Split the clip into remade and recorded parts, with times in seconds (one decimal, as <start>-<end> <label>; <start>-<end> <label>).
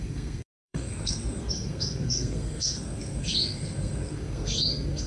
0.0-5.1 remade